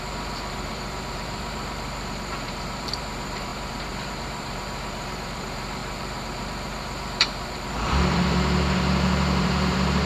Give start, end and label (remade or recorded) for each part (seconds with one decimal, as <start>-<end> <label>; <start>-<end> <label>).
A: 0.0-10.1 remade